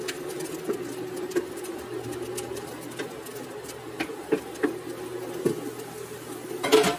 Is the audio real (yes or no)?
yes